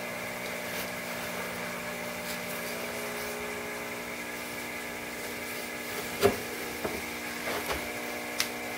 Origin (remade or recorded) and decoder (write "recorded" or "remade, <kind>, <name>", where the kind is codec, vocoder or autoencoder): recorded